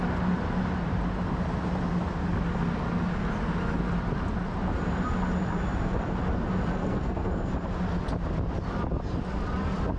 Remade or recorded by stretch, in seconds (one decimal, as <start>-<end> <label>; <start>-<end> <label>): 0.0-6.8 recorded; 6.8-7.5 remade; 7.5-10.0 recorded